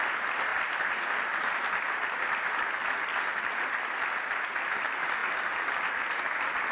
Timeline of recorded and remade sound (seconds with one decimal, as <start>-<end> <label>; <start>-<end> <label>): 0.0-6.7 recorded